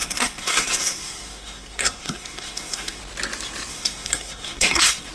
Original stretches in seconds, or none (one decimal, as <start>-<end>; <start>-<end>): 3.0-3.7